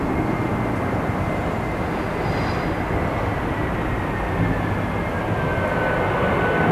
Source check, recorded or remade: recorded